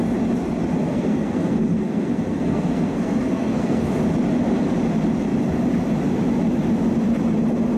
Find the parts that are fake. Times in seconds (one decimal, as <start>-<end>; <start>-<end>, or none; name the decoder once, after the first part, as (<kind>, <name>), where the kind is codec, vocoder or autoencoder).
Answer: 0.8-3.9 (codec, SNAC)